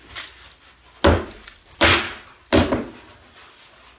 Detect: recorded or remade recorded